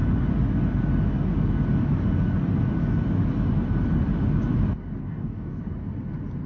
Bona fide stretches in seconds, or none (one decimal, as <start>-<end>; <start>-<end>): 0.0-5.0; 5.6-6.5